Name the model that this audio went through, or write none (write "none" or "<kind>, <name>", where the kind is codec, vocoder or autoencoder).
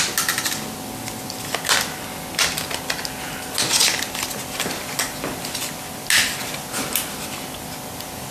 none